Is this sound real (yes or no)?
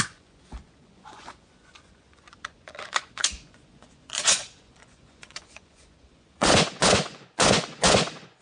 no